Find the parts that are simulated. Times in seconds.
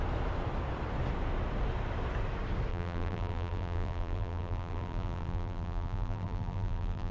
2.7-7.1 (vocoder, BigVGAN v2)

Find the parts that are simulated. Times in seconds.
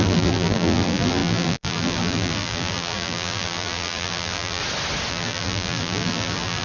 0.0-4.6 (vocoder, BigVGAN v2); 5.1-6.6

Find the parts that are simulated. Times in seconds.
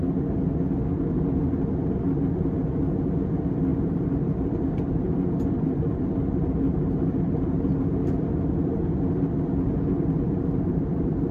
3.7-8.3 (vocoder, BigVGAN v2)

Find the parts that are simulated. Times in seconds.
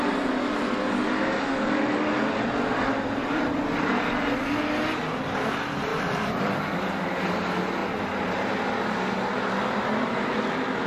5.9-6.6 (vocoder, BigVGAN v2)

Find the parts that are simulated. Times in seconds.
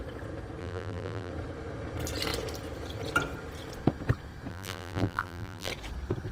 0.6-1.3 (vocoder, BigVGAN v2); 4.5-5.7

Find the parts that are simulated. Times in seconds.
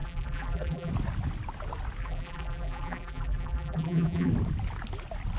0.0-0.9 (vocoder, BigVGAN v2); 2.0-4.3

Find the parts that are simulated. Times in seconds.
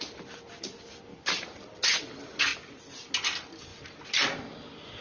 1.1-1.7 (vocoder, BigVGAN v2); 2.5-3.1